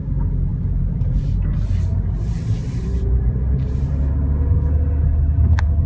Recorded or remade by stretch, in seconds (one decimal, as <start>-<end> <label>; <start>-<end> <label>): 0.0-0.5 recorded; 0.5-1.3 remade; 1.3-2.6 recorded; 2.6-3.9 remade; 3.9-5.9 recorded